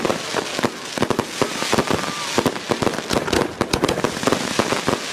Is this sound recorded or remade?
recorded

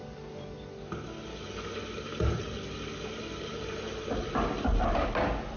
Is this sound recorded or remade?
recorded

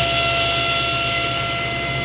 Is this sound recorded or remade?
recorded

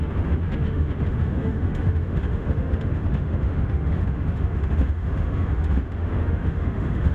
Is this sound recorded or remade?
remade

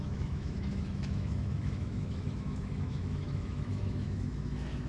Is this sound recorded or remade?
remade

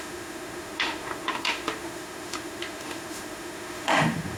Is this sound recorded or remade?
remade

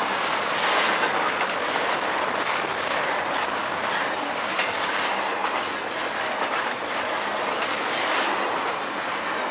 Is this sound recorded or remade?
recorded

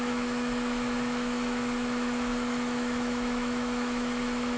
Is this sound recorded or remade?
remade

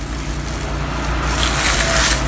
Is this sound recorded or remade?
recorded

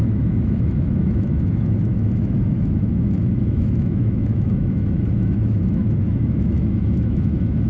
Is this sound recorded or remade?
remade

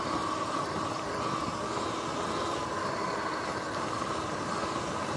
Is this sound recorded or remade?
recorded